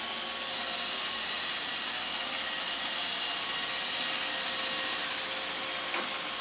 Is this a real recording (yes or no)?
yes